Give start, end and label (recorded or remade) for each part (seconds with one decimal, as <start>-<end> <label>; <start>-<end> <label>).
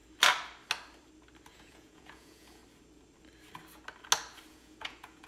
0.0-1.5 recorded; 1.5-2.6 remade; 2.6-4.5 recorded; 4.5-5.3 remade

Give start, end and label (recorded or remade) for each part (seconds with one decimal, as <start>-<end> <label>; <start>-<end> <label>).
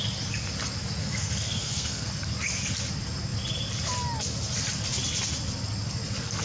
0.0-1.0 recorded; 1.0-2.1 remade; 2.1-6.4 recorded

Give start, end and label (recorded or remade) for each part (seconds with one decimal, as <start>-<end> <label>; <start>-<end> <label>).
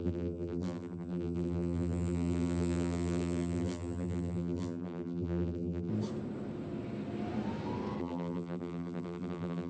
0.0-5.9 remade; 5.9-8.0 recorded; 8.0-9.7 remade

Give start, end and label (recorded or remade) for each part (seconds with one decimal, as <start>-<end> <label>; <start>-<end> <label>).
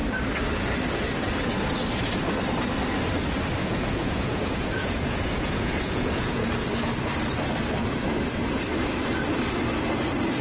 0.0-3.6 recorded; 3.6-6.5 remade; 6.5-10.4 recorded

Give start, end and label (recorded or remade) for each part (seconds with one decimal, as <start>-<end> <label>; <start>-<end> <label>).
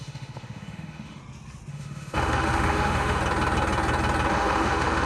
0.0-1.2 remade; 1.2-1.7 recorded; 1.7-3.2 remade; 3.2-4.3 recorded; 4.3-5.1 remade